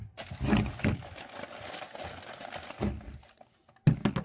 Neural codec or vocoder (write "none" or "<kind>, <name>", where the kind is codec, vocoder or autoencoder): none